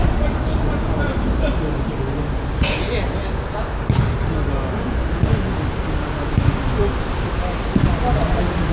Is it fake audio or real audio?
real